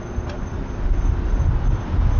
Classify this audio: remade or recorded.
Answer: recorded